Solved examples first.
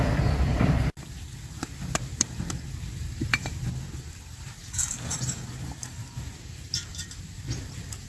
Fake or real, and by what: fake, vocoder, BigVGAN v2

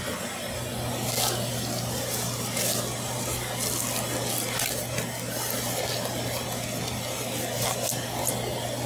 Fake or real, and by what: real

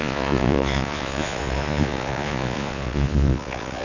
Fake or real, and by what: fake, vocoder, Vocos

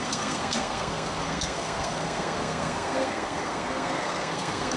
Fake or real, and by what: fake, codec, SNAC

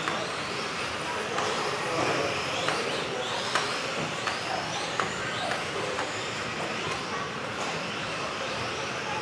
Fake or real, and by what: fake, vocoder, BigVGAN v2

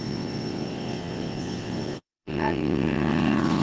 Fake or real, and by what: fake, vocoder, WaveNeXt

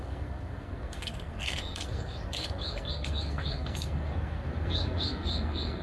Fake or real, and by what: fake, codec, SNAC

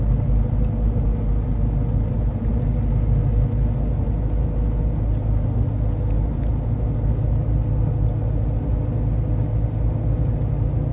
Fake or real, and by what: real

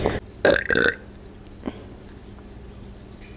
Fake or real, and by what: real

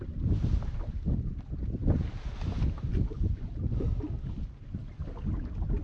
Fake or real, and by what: real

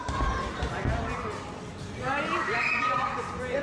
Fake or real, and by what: real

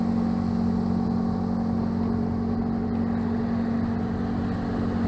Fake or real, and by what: real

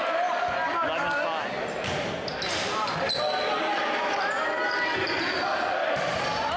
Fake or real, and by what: real